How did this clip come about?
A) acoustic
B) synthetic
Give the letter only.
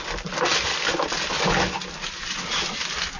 A